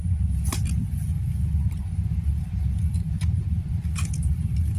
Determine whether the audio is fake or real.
fake